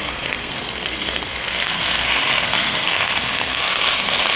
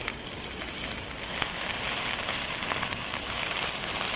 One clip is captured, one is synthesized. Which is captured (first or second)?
second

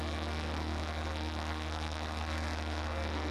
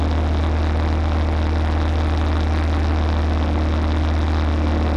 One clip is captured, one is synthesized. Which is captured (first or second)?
second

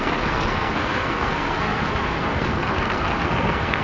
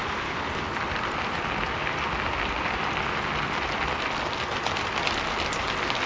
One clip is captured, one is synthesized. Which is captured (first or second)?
second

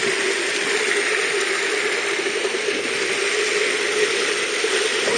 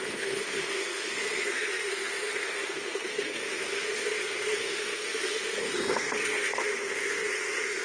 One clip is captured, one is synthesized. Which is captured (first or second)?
first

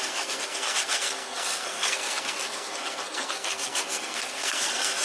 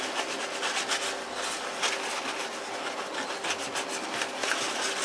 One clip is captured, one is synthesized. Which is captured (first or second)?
second